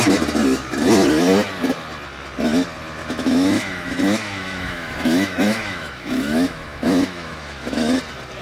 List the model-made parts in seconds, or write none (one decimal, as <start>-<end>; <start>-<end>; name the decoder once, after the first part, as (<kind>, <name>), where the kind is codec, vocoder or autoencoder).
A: 3.0-8.0 (autoencoder, DAC-VAE)